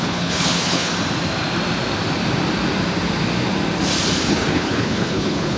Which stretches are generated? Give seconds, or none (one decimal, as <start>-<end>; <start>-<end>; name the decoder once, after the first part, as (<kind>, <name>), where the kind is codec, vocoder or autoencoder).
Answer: 0.0-0.9 (codec, HILCodec); 4.3-5.6